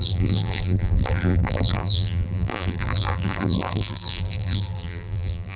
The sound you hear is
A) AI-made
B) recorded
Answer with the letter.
A